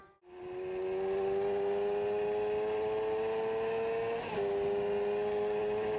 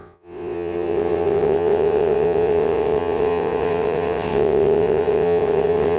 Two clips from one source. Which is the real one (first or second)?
first